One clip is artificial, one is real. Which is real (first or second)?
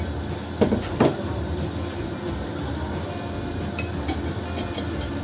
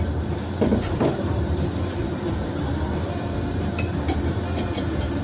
first